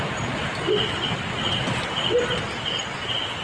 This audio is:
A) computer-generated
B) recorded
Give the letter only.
B